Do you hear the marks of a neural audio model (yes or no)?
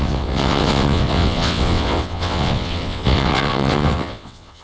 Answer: yes